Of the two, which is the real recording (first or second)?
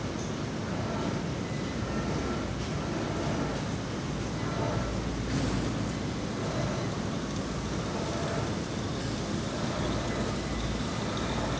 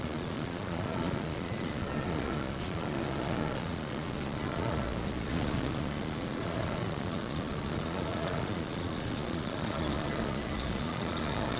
first